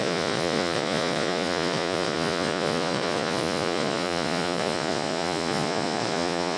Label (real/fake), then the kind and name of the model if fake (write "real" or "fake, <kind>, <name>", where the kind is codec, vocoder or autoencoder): fake, vocoder, Vocos